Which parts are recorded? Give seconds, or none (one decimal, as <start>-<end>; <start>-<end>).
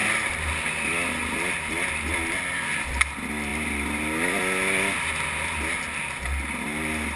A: 0.0-7.2